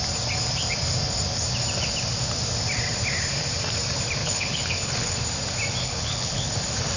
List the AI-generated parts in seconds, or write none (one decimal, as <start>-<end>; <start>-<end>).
4.2-5.2; 5.8-6.6